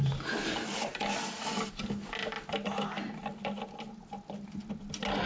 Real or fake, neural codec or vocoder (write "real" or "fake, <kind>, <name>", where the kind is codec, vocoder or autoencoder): real